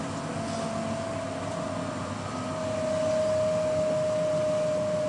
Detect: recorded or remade recorded